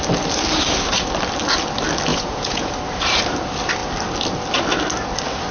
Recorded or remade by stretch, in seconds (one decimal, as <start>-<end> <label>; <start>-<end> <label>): 0.0-2.1 recorded; 2.1-2.7 remade; 2.7-5.5 recorded